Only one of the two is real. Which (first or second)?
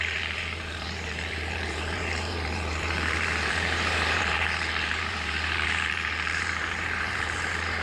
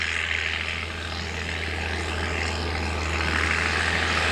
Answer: second